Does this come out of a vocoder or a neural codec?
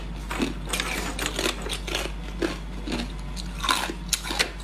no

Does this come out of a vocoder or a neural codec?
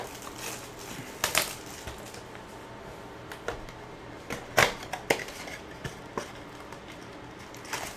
no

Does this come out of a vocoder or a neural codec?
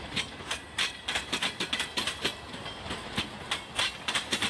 no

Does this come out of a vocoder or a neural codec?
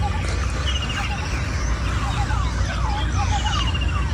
no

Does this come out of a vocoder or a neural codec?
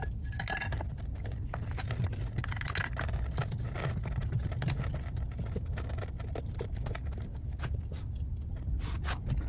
no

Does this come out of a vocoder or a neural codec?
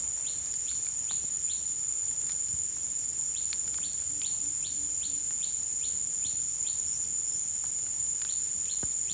no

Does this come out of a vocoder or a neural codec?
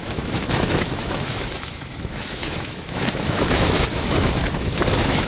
yes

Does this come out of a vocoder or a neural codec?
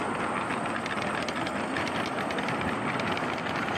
no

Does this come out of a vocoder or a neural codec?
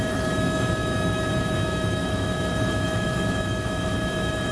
yes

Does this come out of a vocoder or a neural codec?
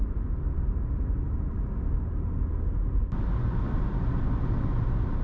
no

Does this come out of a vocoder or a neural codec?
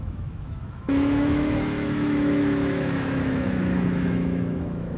yes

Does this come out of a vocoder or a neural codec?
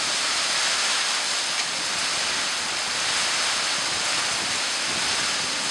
no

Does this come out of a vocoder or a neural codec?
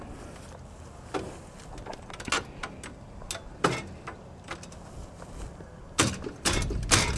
no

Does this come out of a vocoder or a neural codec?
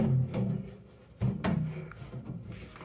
no